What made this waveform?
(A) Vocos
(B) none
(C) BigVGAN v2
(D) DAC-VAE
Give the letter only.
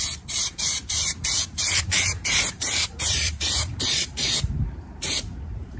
C